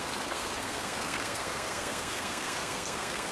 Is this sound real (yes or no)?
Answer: no